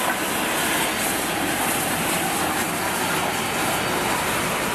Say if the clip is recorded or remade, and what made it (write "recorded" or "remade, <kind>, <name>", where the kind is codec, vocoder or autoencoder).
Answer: recorded